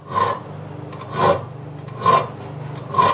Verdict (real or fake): real